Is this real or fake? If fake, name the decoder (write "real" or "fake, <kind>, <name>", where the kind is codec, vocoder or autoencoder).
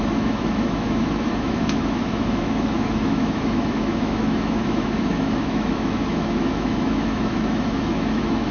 fake, autoencoder, DAC-VAE